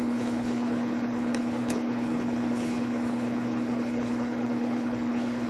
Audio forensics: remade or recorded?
remade